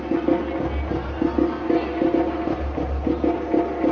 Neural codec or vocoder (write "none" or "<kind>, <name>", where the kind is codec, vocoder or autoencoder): none